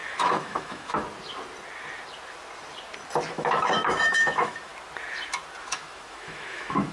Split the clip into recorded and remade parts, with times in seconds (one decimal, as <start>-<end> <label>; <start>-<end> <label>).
0.0-1.0 remade; 1.0-3.3 recorded; 3.3-4.7 remade; 4.7-5.6 recorded; 5.6-6.9 remade